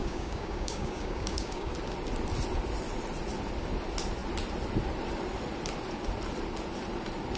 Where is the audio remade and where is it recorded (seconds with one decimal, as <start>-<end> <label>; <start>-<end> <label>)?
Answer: 0.0-1.7 remade; 1.7-7.4 recorded

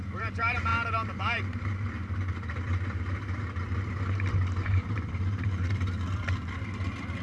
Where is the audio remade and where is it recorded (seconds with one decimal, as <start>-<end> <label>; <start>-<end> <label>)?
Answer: 0.0-7.2 remade

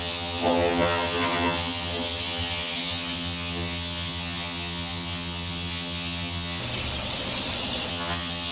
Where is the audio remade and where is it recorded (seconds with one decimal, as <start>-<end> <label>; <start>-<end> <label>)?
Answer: 0.0-6.6 remade; 6.6-7.9 recorded; 7.9-8.5 remade

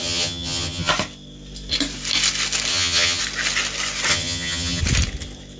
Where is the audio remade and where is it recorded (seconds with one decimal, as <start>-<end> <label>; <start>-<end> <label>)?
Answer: 0.0-0.9 remade; 0.9-2.7 recorded; 2.7-3.2 remade; 3.2-4.1 recorded; 4.1-4.8 remade; 4.8-5.6 recorded

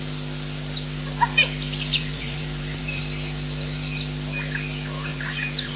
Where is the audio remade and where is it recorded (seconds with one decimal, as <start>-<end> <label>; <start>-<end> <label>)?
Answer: 0.0-1.9 recorded; 1.9-3.0 remade; 3.0-5.1 recorded; 5.1-5.8 remade